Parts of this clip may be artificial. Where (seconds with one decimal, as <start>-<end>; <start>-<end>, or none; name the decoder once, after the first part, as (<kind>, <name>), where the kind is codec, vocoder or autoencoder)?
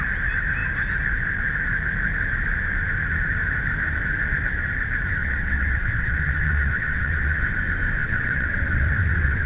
5.2-7.5 (vocoder, WaveNeXt); 8.0-9.5